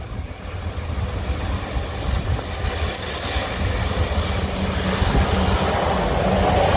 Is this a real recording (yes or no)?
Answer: yes